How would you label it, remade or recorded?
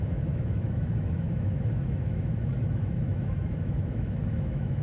remade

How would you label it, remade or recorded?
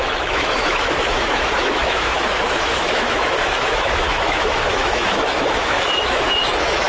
remade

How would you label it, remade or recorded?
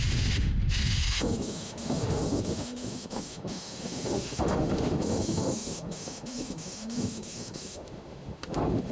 remade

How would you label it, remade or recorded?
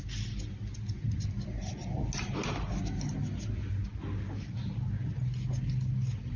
recorded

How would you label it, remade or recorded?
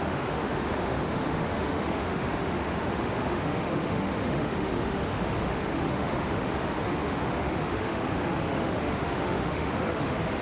remade